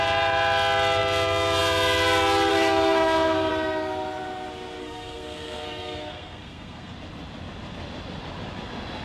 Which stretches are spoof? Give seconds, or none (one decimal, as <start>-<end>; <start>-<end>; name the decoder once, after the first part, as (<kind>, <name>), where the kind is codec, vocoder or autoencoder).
2.5-3.5 (codec, SNAC); 4.8-6.9